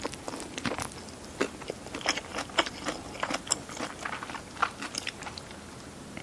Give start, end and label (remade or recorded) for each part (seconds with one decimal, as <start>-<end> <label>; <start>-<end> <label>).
0.0-6.2 recorded